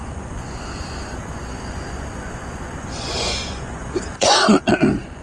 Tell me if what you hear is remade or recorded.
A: remade